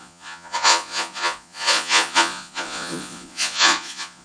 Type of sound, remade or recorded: remade